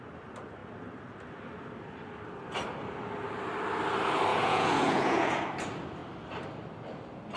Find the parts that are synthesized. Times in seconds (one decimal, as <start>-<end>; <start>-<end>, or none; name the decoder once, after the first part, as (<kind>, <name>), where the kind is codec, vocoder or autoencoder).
4.3-5.4 (vocoder, Vocos)